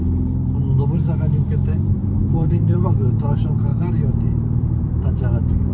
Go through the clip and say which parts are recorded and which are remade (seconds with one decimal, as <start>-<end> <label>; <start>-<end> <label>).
0.0-5.7 remade